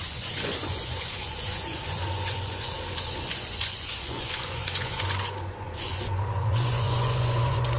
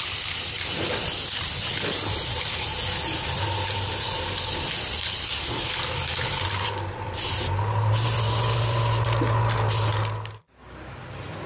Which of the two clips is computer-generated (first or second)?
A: first